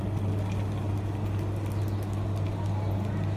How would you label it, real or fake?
real